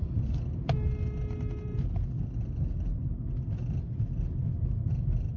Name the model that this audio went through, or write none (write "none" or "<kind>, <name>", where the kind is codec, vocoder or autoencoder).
none